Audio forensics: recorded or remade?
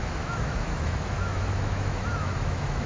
remade